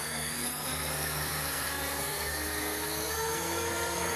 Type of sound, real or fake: fake